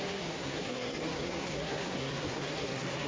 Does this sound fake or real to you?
fake